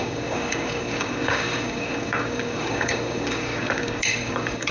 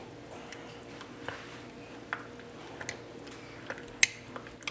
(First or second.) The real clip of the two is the second